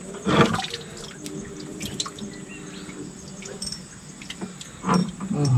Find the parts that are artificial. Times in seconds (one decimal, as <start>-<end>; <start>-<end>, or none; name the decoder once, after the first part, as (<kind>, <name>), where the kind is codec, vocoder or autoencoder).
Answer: 1.7-3.8 (vocoder, BigVGAN v2); 5.0-5.6